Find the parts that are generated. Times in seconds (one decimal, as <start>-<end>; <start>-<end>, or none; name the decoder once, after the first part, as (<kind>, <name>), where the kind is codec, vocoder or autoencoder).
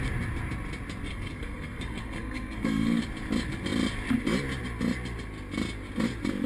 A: 1.1-3.0 (codec, SNAC)